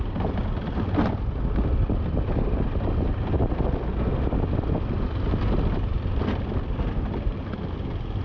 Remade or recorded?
recorded